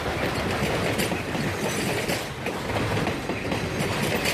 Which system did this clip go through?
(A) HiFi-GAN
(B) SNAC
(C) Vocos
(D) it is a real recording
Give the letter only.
D